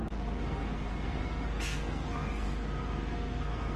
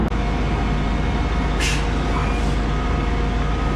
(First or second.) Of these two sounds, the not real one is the first